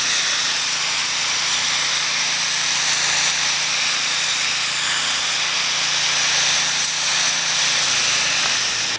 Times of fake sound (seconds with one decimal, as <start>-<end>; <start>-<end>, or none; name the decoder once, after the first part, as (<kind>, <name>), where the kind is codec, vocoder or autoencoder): none